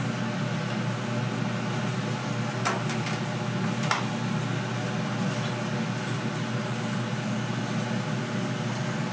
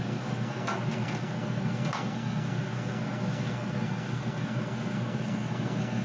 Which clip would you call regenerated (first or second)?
second